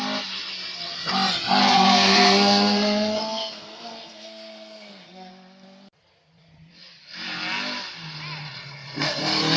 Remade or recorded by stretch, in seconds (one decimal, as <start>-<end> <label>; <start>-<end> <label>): 0.0-1.6 recorded; 1.6-5.3 remade; 5.3-9.6 recorded

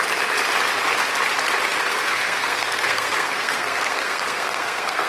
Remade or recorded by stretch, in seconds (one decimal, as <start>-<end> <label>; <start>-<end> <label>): 0.0-1.9 recorded; 1.9-5.1 remade

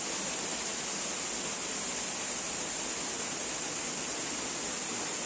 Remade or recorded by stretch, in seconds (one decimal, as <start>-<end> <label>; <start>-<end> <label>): 0.0-5.3 recorded

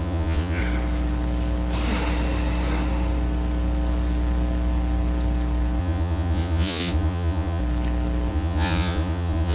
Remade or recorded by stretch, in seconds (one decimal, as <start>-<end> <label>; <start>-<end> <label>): 0.0-0.6 remade; 0.6-5.8 recorded; 5.8-7.6 remade; 7.6-8.3 recorded; 8.3-9.5 remade

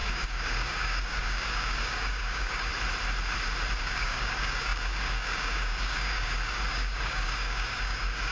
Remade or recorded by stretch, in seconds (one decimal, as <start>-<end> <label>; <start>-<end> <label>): 0.0-2.7 remade; 2.7-3.8 recorded; 3.8-8.3 remade